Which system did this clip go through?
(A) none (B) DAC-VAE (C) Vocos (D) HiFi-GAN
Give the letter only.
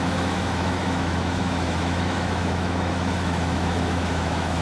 B